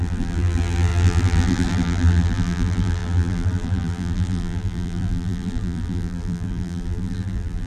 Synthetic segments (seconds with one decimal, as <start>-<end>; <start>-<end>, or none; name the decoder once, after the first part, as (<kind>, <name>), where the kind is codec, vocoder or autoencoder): 0.0-7.7 (vocoder, BigVGAN v2)